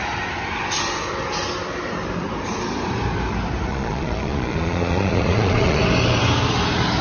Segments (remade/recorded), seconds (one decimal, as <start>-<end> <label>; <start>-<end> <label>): 0.0-3.7 recorded; 3.7-5.8 remade; 5.8-7.0 recorded